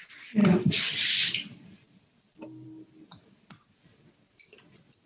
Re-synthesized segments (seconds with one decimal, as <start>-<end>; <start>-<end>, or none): 0.4-3.5